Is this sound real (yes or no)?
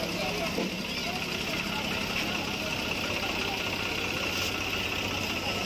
yes